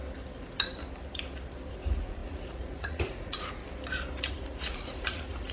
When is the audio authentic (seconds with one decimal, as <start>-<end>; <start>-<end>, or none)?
0.0-1.7; 3.6-4.3